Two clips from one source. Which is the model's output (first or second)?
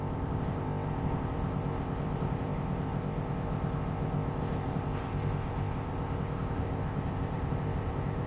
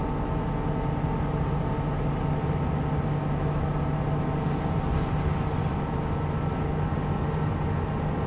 first